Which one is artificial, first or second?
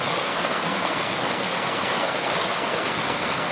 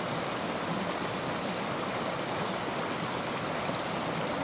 first